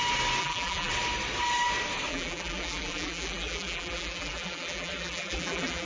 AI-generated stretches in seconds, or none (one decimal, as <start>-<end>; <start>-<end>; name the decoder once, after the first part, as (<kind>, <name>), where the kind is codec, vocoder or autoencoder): 0.4-0.9 (vocoder, BigVGAN v2); 2.1-5.9